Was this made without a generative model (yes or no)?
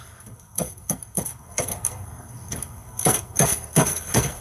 no